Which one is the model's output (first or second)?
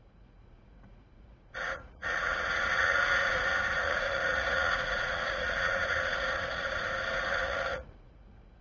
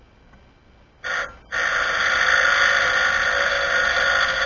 first